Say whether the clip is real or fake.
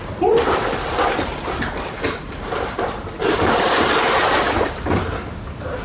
real